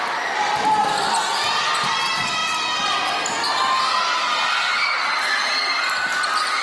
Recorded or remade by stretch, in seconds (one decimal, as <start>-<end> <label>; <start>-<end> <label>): 0.0-2.4 remade; 2.4-6.6 recorded